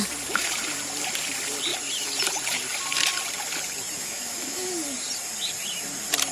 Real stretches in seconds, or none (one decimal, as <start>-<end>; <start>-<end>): 0.0-4.0; 4.7-6.3